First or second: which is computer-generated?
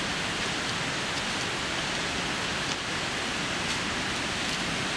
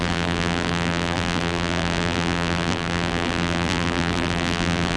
second